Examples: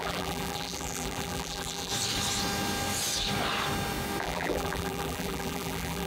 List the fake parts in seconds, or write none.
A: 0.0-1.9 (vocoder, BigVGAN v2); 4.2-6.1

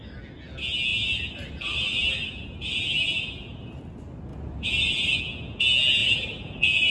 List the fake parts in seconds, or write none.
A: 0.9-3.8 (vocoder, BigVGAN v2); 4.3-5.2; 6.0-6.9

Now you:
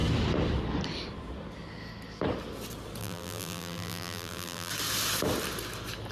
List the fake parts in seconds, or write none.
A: 3.0-4.7 (vocoder, BigVGAN v2)